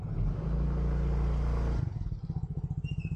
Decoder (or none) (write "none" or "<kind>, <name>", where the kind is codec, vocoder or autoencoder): none